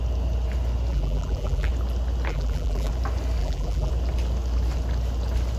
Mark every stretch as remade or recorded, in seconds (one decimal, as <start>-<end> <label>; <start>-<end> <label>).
0.0-0.9 recorded; 0.9-1.7 remade; 1.7-2.3 recorded; 2.3-2.9 remade; 2.9-3.4 recorded; 3.4-3.9 remade; 3.9-5.6 recorded